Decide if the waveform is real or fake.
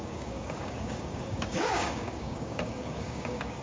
fake